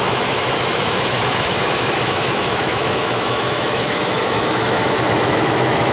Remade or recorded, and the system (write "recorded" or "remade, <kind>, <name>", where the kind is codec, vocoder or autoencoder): remade, autoencoder, DAC-VAE